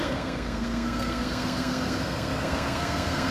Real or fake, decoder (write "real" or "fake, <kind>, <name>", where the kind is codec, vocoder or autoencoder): fake, codec, SNAC